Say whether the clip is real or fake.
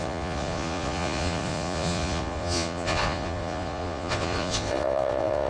fake